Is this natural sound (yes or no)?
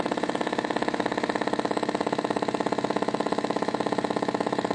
no